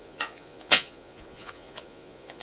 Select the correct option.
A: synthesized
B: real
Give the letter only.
A